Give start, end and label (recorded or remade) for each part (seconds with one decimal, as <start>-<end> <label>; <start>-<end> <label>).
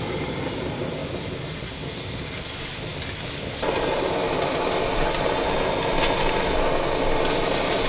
0.0-7.9 recorded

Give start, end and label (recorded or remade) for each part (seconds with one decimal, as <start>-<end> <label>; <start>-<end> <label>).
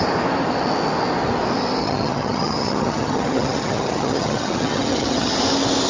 0.0-1.8 recorded; 1.8-5.3 remade; 5.3-5.9 recorded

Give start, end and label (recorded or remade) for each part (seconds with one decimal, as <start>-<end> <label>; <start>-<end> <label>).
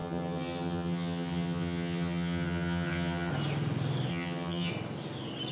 0.0-3.3 remade; 3.3-4.1 recorded; 4.1-4.7 remade; 4.7-5.5 recorded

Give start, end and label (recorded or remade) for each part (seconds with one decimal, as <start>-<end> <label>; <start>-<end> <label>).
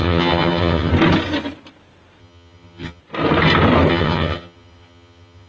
0.0-0.9 remade; 0.9-2.2 recorded; 2.2-3.0 remade; 3.0-3.9 recorded; 3.9-5.5 remade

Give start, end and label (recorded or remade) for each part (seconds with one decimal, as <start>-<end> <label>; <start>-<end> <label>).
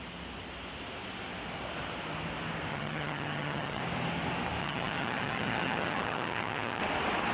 0.0-2.7 recorded; 2.7-3.8 remade; 3.8-4.6 recorded; 4.6-6.8 remade; 6.8-7.3 recorded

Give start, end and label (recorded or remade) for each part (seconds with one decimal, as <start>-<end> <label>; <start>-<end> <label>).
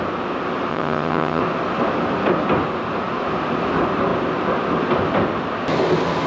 0.0-0.7 recorded; 0.7-1.4 remade; 1.4-6.3 recorded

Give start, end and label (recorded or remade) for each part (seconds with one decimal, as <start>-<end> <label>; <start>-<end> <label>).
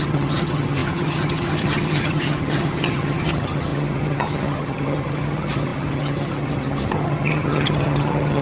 0.0-8.4 remade